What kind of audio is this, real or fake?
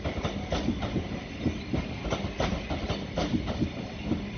real